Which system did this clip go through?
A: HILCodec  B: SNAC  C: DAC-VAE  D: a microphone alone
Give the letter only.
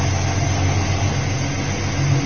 D